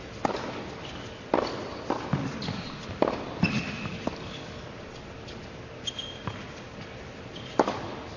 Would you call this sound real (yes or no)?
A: yes